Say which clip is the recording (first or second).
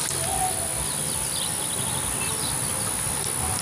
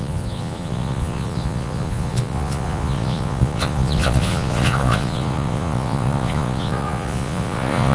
first